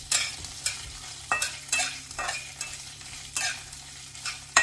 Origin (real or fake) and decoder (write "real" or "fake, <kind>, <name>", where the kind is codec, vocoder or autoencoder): fake, vocoder, BigVGAN v2